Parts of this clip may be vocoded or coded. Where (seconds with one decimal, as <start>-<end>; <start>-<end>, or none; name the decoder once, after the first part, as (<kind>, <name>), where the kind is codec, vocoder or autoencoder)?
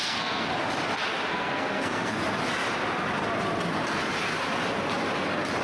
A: 0.0-0.5 (codec, SNAC); 1.3-2.2